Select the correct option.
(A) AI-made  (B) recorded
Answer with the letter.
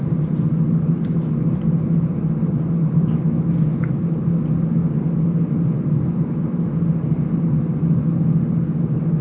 B